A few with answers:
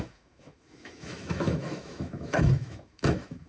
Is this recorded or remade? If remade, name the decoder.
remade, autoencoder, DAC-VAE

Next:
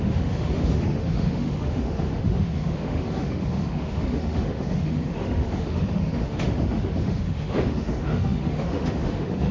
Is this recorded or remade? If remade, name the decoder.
remade, autoencoder, DAC-VAE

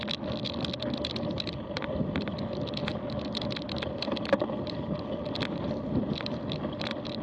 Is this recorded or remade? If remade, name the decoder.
recorded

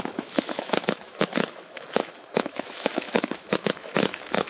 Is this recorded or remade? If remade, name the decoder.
remade, autoencoder, DAC-VAE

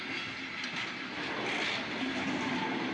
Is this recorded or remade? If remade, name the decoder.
recorded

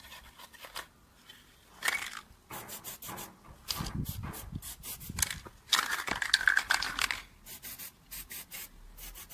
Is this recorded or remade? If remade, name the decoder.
recorded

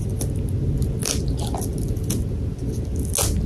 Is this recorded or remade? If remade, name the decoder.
recorded